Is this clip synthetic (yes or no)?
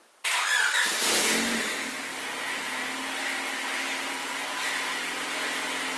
no